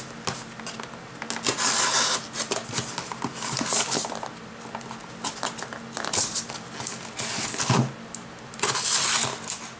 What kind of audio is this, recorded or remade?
recorded